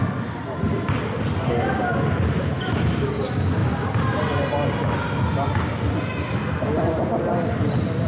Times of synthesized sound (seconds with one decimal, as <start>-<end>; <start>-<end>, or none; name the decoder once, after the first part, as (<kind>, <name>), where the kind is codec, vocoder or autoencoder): 5.3-6.5 (vocoder, BigVGAN v2)